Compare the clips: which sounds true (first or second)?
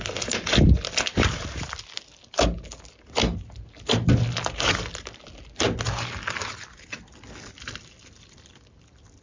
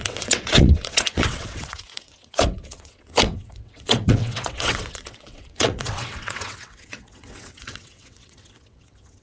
first